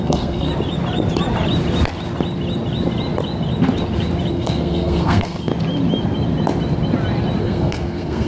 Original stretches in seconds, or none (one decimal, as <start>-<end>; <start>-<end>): 0.5-4.3; 5.5-7.4